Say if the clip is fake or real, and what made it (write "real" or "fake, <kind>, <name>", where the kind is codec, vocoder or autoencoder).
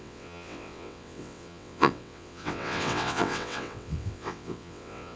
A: fake, vocoder, WaveNeXt